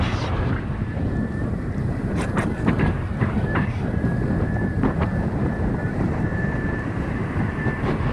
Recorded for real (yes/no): no